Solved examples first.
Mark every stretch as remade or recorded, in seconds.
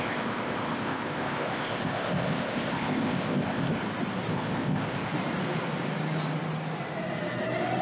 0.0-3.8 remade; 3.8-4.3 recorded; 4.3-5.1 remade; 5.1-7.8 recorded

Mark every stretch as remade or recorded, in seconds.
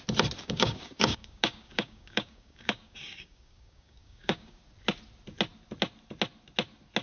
0.0-0.4 recorded; 0.4-4.6 remade; 4.6-7.0 recorded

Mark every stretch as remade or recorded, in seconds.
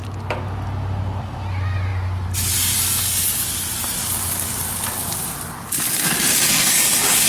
0.0-7.3 recorded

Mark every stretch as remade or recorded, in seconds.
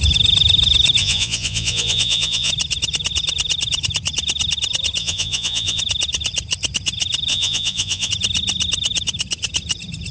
0.0-1.0 recorded; 1.0-2.5 remade; 2.5-5.0 recorded; 5.0-5.8 remade; 5.8-7.3 recorded; 7.3-8.1 remade; 8.1-10.1 recorded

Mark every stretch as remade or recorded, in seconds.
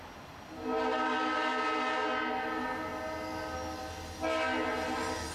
0.0-5.3 recorded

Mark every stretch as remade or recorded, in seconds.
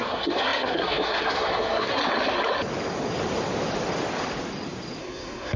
0.0-2.0 remade; 2.0-5.0 recorded; 5.0-5.6 remade